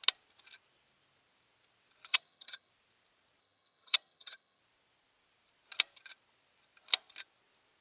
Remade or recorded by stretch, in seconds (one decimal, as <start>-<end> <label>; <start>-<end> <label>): 0.0-2.1 recorded; 2.1-2.7 remade; 2.7-3.4 recorded; 3.4-4.6 remade; 4.6-7.8 recorded